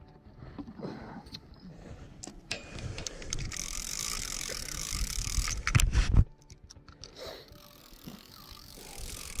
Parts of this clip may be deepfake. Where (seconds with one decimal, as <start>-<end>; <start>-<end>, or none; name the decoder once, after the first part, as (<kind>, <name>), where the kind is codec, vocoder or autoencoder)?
7.8-8.3 (codec, SNAC)